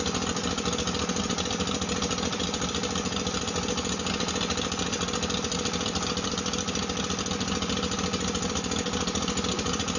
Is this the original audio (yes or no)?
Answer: yes